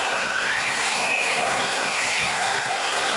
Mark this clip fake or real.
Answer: fake